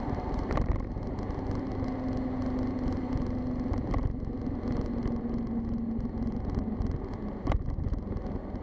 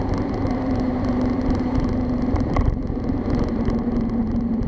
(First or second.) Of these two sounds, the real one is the first